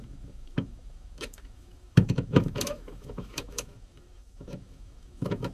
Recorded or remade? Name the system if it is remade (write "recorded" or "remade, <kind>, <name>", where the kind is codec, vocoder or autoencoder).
remade, autoencoder, DAC-VAE